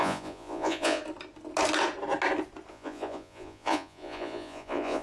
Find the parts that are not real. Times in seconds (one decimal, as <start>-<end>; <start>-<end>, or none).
0.0-1.0; 2.7-5.0

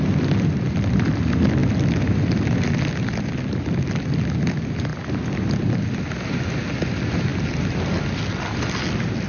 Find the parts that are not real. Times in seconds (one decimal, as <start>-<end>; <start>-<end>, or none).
none

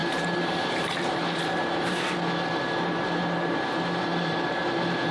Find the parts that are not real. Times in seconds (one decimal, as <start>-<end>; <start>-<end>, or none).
0.0-5.1